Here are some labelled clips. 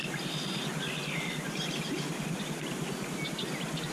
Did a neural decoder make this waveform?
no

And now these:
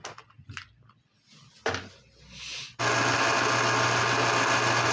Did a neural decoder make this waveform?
no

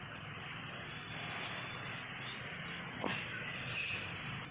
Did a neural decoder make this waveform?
no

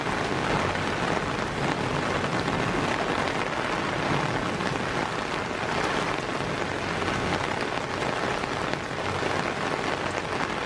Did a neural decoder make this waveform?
no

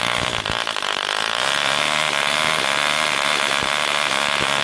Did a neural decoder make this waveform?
no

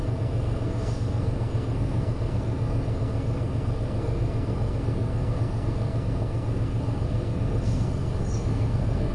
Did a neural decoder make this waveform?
yes